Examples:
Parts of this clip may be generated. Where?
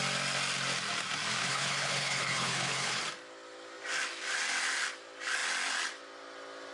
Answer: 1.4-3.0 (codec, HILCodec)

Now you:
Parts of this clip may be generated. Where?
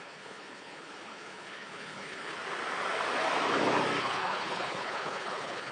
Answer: 0.0-2.4 (codec, HILCodec); 4.0-5.7